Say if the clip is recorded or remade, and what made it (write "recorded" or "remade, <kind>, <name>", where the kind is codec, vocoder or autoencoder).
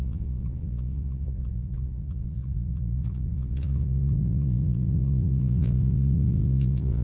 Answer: remade, vocoder, Vocos